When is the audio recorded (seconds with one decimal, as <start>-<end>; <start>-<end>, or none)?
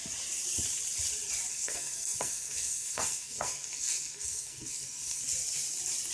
0.0-1.5; 5.2-6.1